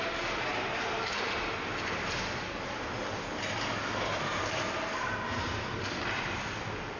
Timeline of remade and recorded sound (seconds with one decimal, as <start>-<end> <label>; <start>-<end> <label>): 0.0-7.0 recorded